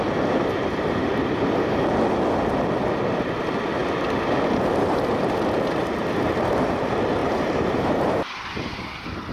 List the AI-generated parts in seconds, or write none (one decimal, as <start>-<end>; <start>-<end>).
7.2-8.2